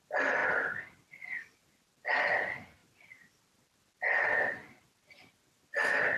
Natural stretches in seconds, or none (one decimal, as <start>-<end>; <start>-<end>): 0.0-6.2